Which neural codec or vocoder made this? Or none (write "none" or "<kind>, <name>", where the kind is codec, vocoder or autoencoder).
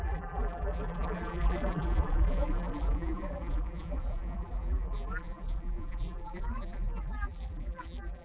vocoder, BigVGAN v2